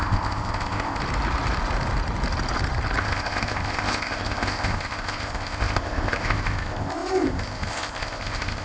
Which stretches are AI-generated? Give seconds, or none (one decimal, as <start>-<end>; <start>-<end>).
0.0-1.0; 3.0-8.6

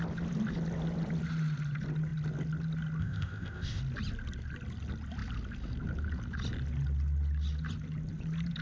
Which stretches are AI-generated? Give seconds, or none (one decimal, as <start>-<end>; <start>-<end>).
3.0-3.8

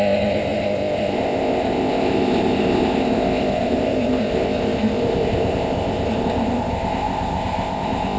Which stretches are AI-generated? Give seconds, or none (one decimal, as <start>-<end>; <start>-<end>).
0.0-8.2

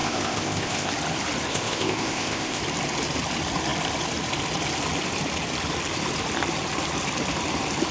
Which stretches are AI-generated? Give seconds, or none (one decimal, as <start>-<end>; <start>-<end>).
0.0-0.9; 1.5-2.6

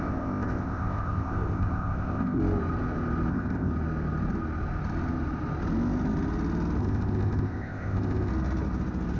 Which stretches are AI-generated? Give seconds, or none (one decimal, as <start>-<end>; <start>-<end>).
0.0-2.4; 3.3-3.7; 6.8-8.3

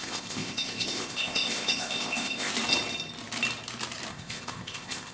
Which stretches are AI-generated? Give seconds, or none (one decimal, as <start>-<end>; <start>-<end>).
0.0-2.5; 4.1-5.1